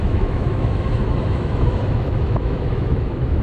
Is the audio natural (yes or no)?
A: no